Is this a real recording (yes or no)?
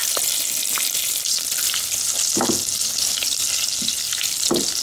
yes